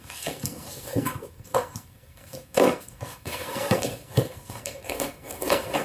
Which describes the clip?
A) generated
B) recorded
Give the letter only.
A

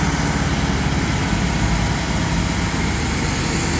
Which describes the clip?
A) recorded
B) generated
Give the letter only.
A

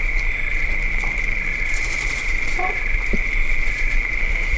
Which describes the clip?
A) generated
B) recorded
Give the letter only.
A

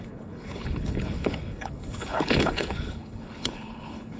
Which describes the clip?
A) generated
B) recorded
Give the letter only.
A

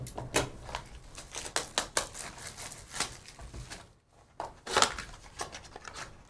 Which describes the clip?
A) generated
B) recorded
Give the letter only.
B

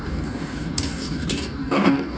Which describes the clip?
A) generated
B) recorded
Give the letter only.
A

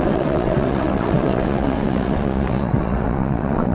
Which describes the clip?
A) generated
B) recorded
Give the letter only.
A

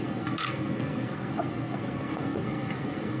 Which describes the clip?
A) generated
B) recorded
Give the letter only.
A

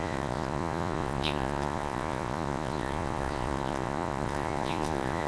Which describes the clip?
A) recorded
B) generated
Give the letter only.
B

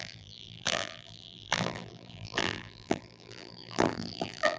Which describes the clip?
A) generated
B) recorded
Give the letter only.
A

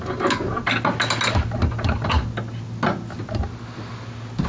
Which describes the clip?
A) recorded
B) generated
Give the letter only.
A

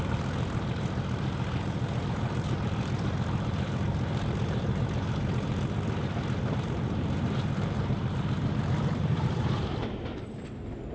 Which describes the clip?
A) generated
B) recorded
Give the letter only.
A